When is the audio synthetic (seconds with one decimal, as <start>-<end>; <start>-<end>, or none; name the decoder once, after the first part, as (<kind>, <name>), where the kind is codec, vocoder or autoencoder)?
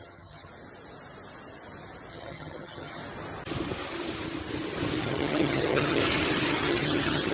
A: 0.0-0.5 (vocoder, HiFi-GAN); 2.1-3.0; 5.0-6.0; 6.5-7.3